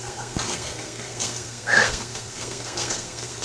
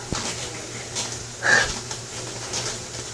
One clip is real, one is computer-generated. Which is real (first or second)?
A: second